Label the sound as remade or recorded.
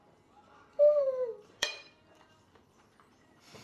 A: remade